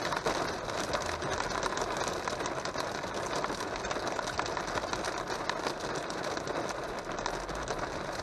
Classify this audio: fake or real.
real